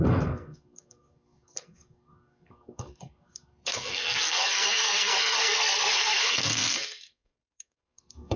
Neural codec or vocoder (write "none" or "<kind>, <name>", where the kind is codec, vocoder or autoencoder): codec, SNAC